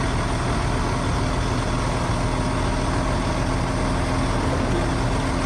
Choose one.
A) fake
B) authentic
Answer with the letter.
B